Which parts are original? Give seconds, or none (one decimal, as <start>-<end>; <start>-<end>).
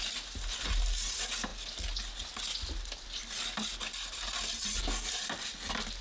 0.0-6.0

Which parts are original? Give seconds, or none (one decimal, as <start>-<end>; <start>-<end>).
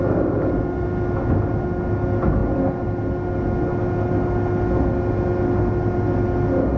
0.0-6.8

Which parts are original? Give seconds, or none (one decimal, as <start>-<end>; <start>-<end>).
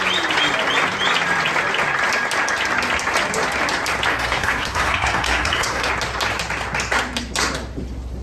0.0-4.1; 5.9-8.2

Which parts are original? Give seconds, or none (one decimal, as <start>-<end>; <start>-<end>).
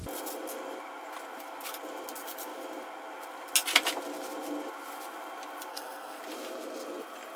0.0-5.7; 6.2-7.4